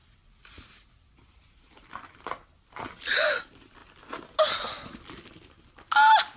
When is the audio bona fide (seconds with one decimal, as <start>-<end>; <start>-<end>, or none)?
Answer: 0.0-6.4